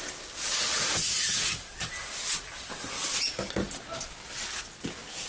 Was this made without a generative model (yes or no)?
yes